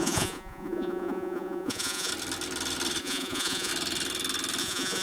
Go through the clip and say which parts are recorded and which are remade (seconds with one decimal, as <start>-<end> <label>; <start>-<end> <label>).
0.0-2.1 remade; 2.1-3.0 recorded; 3.0-3.7 remade; 3.7-4.6 recorded; 4.6-5.0 remade